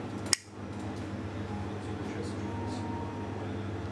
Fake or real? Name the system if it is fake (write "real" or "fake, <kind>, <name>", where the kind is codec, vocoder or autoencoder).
real